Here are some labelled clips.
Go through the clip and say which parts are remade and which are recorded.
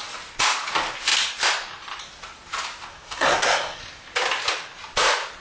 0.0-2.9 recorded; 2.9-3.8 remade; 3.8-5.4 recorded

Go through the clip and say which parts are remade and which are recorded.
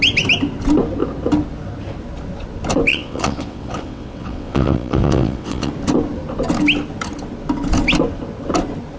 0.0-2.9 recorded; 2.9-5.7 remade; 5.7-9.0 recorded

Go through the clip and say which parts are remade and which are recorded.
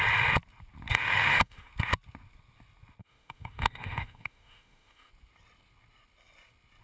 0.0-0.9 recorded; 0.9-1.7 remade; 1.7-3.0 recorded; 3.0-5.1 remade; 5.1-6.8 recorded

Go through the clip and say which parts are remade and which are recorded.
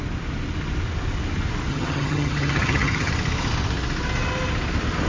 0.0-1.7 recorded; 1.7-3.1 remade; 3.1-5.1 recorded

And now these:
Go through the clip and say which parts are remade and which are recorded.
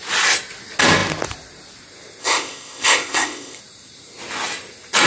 0.0-2.2 recorded; 2.2-3.6 remade; 3.6-5.1 recorded